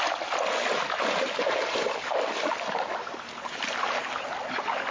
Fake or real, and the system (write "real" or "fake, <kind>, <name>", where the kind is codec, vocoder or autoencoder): real